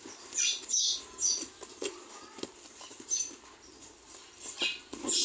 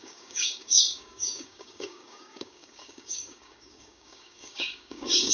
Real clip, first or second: first